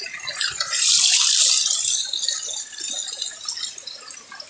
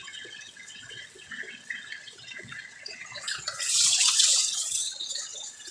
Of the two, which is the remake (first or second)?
second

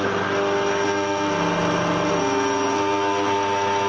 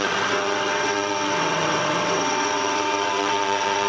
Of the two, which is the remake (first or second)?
second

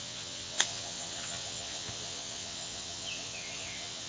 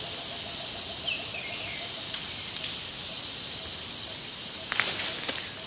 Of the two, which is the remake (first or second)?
first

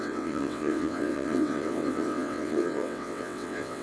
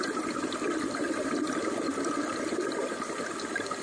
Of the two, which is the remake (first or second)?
first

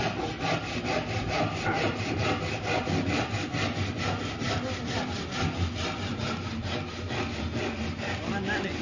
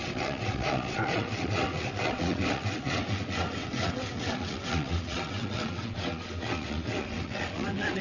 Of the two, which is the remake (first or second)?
second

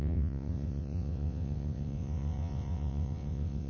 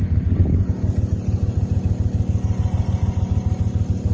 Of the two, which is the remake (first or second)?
first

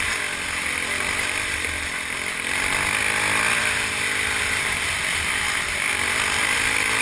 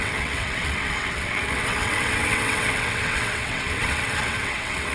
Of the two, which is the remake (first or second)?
second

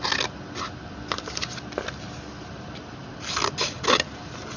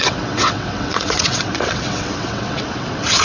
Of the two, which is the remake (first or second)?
second